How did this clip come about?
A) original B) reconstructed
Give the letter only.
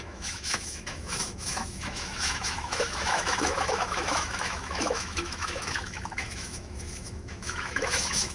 B